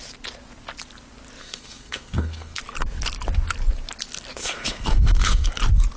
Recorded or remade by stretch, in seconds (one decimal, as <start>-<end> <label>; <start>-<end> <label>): 0.0-1.4 recorded; 1.4-2.6 remade; 2.6-4.4 recorded; 4.4-5.5 remade; 5.5-6.0 recorded